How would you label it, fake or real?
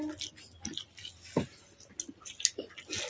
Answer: real